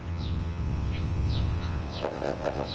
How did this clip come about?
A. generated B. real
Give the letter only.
A